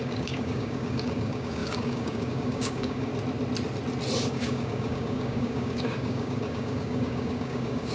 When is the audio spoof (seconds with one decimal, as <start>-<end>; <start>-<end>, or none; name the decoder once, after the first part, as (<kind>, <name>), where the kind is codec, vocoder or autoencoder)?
0.0-3.1 (codec, DAC); 4.3-7.9